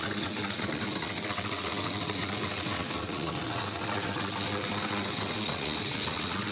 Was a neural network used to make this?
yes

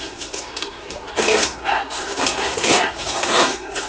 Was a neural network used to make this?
yes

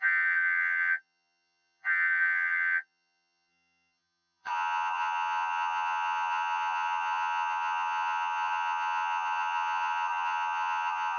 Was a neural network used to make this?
yes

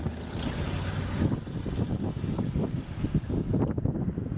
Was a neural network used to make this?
no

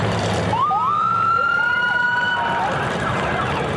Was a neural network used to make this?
yes